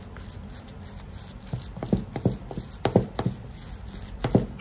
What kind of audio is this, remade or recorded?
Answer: recorded